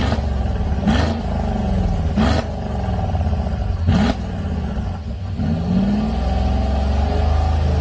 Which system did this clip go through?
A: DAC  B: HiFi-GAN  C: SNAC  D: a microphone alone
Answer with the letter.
D